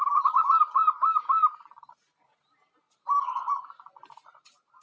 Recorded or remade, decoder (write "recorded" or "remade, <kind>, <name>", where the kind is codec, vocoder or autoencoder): remade, vocoder, BigVGAN v2